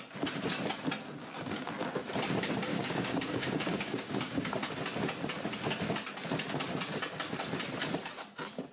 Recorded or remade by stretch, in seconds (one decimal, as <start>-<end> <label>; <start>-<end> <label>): 0.0-1.2 recorded; 1.2-1.7 remade; 1.7-2.7 recorded; 2.7-4.5 remade; 4.5-8.7 recorded